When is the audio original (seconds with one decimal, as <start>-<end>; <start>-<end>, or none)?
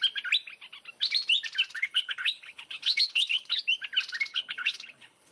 0.0-1.7; 3.6-4.3